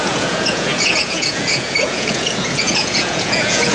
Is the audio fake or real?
fake